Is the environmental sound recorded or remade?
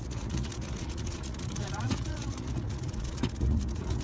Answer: remade